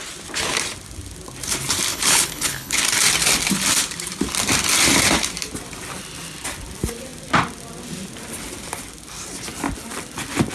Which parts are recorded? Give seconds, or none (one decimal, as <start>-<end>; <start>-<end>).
0.0-1.9; 2.8-10.5